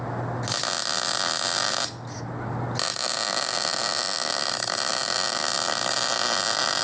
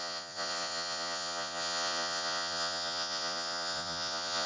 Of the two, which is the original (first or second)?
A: first